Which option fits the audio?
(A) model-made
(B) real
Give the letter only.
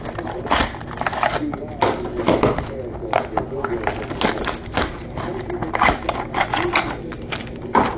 B